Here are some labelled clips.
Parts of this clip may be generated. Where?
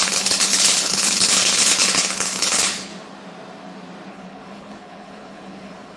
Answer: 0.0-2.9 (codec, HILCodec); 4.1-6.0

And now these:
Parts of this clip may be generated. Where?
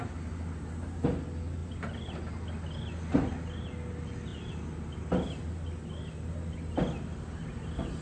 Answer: none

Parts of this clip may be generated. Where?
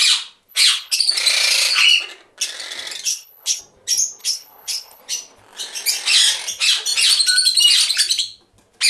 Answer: 0.5-1.0 (codec, HILCodec); 3.1-3.6; 4.2-5.0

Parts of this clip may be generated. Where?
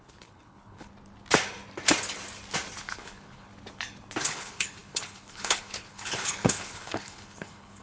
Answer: 0.0-0.9 (codec, HILCodec); 2.8-3.5; 4.2-7.8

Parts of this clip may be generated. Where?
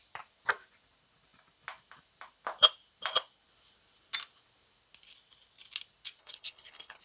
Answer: 6.2-7.0 (codec, HILCodec)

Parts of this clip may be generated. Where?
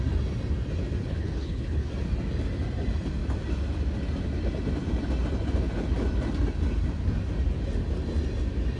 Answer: 1.0-1.9 (codec, HILCodec)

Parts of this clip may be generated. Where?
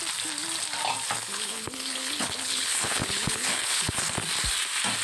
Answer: 1.2-4.0 (codec, HILCodec)